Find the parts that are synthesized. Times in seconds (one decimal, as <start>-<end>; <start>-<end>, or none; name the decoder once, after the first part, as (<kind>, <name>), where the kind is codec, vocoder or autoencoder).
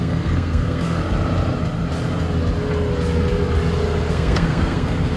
0.0-1.0 (codec, SNAC); 4.1-5.2